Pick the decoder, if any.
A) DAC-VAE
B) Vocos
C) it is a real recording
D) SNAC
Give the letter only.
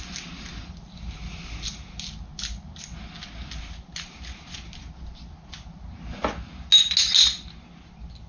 C